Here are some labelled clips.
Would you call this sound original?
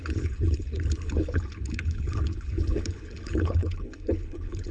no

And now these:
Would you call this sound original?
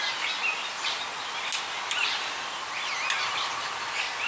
yes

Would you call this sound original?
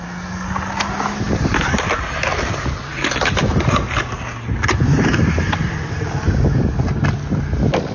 yes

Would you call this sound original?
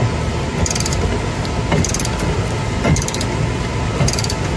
yes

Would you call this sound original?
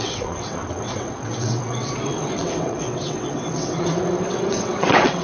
no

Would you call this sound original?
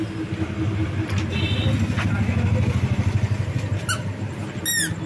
yes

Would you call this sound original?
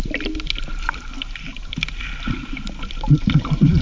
yes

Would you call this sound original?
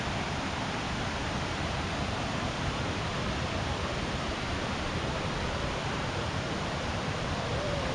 no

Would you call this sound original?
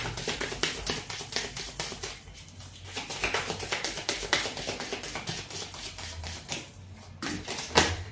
yes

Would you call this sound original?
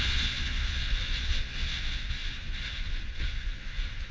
no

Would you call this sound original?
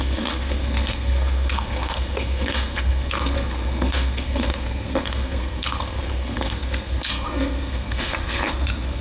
no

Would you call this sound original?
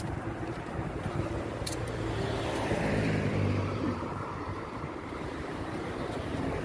no